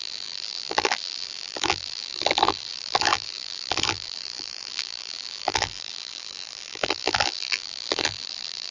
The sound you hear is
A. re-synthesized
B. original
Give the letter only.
A